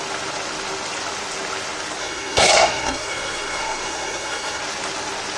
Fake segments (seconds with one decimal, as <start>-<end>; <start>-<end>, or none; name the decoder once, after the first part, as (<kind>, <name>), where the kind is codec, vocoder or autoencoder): 2.0-4.6 (codec, SNAC)